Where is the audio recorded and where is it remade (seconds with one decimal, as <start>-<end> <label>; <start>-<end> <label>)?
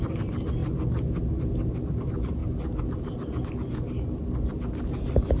0.0-5.4 recorded